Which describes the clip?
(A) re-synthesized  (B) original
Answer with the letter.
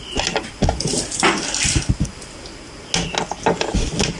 B